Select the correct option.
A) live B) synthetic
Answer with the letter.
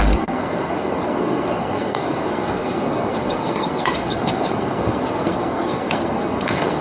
B